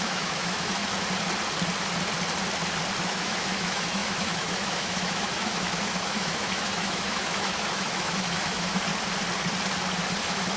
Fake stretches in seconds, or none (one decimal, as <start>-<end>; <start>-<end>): 0.0-0.8; 3.0-8.9; 10.2-10.6